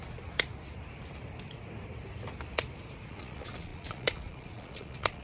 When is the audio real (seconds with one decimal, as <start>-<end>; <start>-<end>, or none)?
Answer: 0.0-3.1